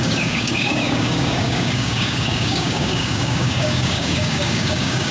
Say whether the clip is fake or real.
fake